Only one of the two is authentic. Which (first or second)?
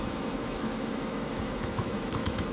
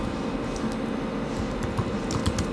second